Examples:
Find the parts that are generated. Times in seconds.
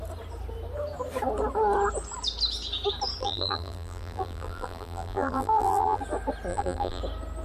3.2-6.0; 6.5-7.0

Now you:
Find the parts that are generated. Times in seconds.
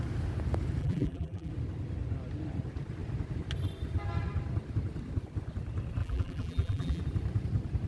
0.8-1.5; 6.0-7.0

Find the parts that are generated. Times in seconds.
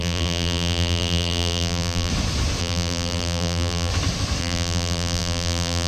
0.0-2.1; 2.6-3.9; 4.4-5.9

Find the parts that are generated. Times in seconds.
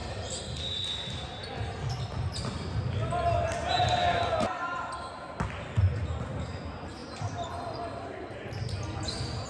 7.0-8.4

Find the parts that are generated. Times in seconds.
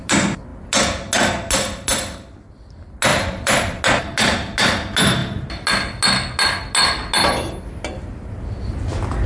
3.1-3.8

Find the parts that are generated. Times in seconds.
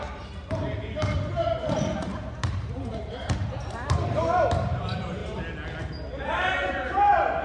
0.0-5.2; 5.9-7.4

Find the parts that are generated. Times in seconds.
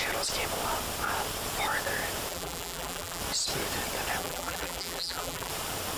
2.3-3.2; 4.2-5.5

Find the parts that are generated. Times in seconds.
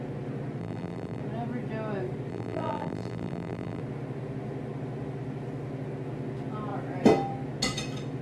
0.6-1.2; 2.3-3.8